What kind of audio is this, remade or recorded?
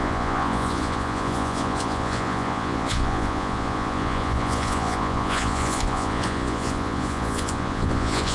remade